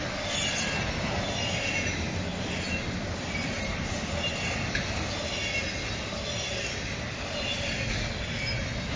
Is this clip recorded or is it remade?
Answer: recorded